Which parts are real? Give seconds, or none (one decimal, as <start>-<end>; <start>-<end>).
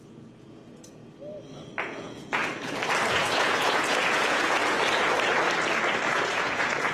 1.0-1.8; 2.4-3.1; 4.6-6.1